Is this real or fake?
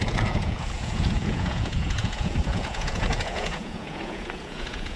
fake